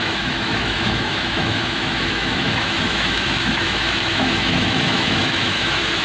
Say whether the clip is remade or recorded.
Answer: remade